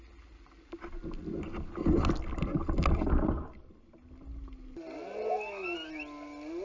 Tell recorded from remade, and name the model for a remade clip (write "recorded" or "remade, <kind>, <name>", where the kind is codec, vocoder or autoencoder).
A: recorded